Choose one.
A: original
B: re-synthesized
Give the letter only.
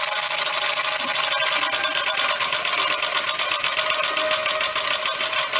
A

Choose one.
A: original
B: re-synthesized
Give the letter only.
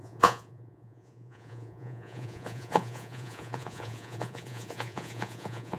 B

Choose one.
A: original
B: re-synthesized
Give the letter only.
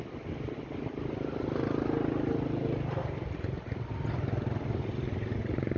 A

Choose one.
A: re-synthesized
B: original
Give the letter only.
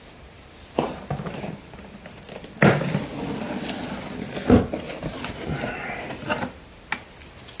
B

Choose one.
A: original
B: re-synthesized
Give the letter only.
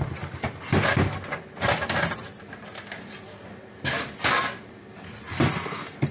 A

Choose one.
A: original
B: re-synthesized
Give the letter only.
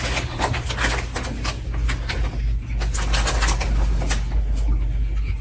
A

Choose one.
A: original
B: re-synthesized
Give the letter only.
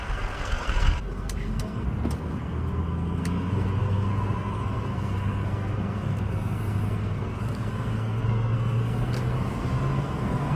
B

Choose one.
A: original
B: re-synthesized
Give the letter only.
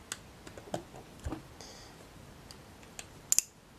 A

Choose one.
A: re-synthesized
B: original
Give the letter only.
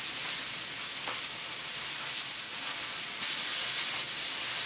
B